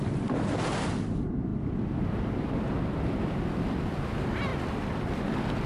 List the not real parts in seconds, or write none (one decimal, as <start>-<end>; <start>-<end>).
0.0-5.7